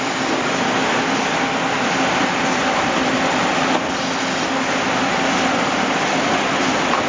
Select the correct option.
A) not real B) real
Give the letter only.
B